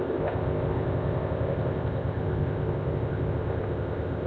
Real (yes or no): no